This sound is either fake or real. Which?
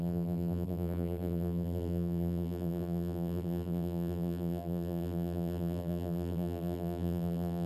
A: fake